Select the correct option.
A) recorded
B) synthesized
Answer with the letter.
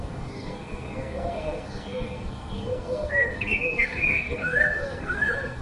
B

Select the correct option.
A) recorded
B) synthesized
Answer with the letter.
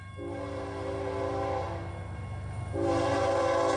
A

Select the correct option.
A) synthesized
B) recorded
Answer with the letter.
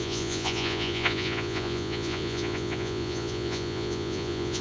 A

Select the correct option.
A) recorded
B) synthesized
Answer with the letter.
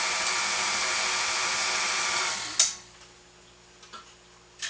A